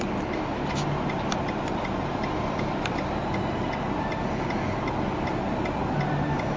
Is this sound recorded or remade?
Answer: recorded